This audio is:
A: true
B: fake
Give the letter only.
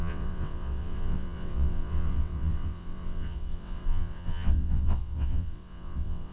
B